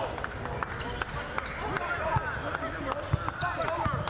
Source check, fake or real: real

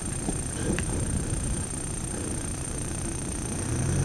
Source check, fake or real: fake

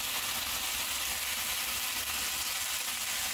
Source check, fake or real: real